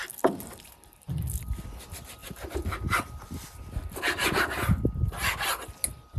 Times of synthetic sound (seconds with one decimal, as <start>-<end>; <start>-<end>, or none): none